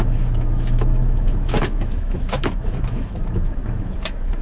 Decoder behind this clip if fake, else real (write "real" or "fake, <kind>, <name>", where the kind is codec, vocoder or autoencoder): fake, autoencoder, DAC-VAE